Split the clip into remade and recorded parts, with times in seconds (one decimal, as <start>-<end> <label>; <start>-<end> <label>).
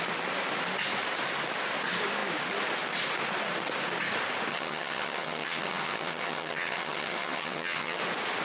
0.0-4.5 recorded; 4.5-8.0 remade; 8.0-8.4 recorded